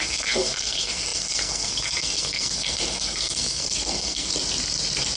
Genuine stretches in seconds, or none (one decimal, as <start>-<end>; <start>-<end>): 4.3-5.2